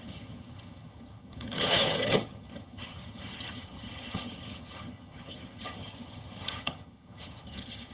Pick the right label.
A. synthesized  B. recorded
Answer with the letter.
A